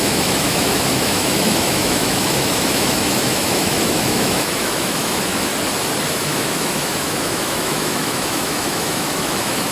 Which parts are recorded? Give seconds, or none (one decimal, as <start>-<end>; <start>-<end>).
5.5-6.1